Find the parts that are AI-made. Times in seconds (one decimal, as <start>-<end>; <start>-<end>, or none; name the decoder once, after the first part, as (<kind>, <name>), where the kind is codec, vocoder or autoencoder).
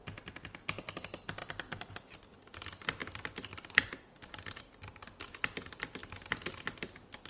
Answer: 3.0-4.6 (vocoder, BigVGAN v2); 6.0-6.6